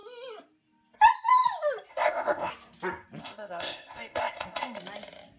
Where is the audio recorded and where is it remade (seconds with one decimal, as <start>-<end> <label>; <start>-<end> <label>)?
0.0-1.9 recorded; 1.9-2.5 remade; 2.5-3.2 recorded; 3.2-4.8 remade; 4.8-5.4 recorded